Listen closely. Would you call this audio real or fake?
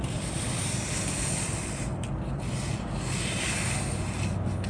real